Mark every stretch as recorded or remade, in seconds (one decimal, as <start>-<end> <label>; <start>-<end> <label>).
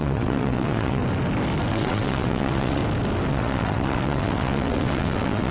0.0-1.0 remade; 1.0-1.7 recorded; 1.7-2.8 remade; 2.8-3.3 recorded; 3.3-5.5 remade